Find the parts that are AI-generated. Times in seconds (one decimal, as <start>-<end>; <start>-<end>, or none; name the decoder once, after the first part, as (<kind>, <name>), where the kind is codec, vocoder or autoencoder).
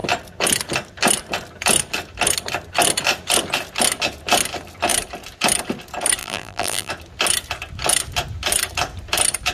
6.2-6.9 (vocoder, BigVGAN v2)